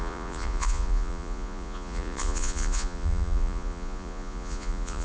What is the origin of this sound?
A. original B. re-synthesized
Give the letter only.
B